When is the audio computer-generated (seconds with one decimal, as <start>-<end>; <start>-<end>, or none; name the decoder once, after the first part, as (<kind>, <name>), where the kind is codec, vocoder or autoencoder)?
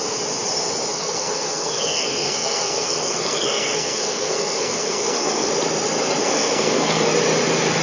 0.9-5.5 (codec, SNAC); 6.2-7.1